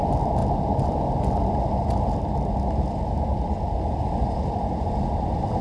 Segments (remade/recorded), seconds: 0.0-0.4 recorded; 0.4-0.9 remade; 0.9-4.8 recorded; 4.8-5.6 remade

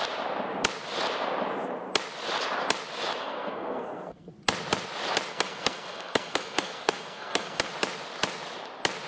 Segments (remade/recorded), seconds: 0.0-3.2 recorded; 3.2-4.3 remade; 4.3-5.3 recorded; 5.3-7.7 remade; 7.7-9.1 recorded

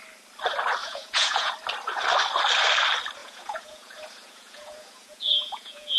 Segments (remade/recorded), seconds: 0.0-0.8 recorded; 0.8-1.5 remade; 1.5-3.2 recorded; 3.2-6.0 remade

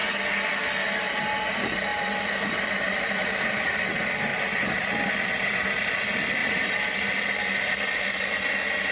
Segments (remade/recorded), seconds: 0.0-1.9 recorded; 1.9-3.9 remade; 3.9-4.3 recorded; 4.3-5.1 remade; 5.1-6.4 recorded; 6.4-7.1 remade; 7.1-8.9 recorded

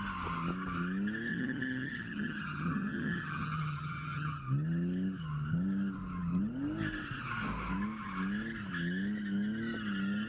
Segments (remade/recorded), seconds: 0.0-1.3 recorded; 1.3-4.4 remade; 4.4-10.3 recorded

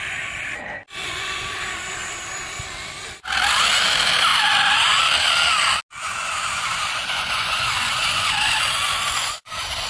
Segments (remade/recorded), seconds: 0.0-1.0 recorded; 1.0-1.5 remade; 1.5-4.3 recorded; 4.3-5.0 remade; 5.0-6.0 recorded; 6.0-9.9 remade

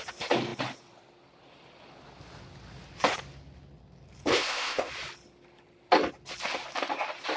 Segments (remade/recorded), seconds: 0.0-4.3 recorded; 4.3-4.9 remade; 4.9-7.4 recorded

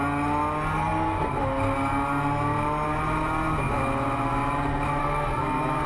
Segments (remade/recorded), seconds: 0.0-5.0 recorded; 5.0-5.9 remade